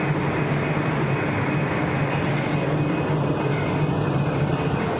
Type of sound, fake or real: real